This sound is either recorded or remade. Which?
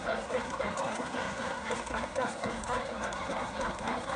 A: remade